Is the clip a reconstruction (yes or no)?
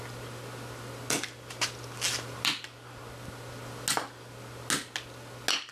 no